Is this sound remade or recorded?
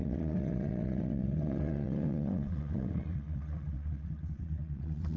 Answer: remade